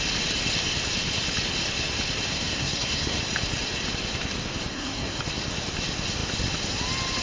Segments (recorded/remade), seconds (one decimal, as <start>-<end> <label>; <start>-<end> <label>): 0.0-2.3 recorded; 2.3-3.2 remade; 3.2-4.7 recorded; 4.7-5.2 remade; 5.2-7.2 recorded